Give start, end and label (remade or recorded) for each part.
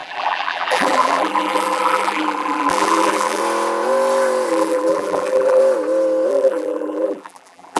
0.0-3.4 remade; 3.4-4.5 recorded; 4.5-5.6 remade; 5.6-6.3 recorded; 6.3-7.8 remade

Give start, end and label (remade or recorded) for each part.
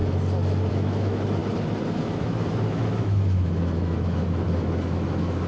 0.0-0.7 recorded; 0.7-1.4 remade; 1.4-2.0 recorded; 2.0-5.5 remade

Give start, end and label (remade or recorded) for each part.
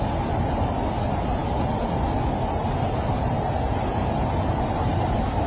0.0-5.5 recorded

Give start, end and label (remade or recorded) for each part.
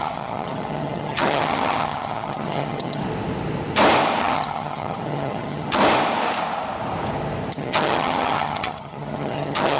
0.0-3.0 remade; 3.0-4.2 recorded; 4.2-5.8 remade; 5.8-7.5 recorded; 7.5-9.8 remade